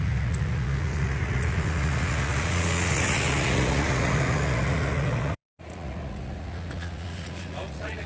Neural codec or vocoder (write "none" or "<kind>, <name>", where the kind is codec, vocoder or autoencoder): vocoder, Vocos